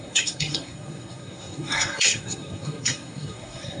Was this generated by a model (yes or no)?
yes